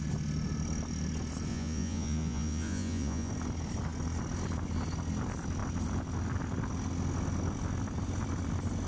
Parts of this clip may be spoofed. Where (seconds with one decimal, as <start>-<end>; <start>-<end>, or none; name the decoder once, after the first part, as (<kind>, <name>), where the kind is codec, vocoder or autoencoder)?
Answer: 1.5-3.3 (vocoder, Vocos)